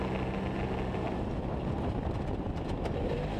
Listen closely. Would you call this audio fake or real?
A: real